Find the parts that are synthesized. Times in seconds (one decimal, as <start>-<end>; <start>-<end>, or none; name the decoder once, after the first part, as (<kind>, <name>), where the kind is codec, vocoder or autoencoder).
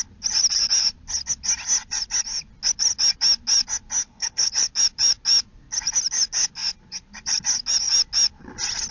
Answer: 4.0-4.5 (codec, HILCodec)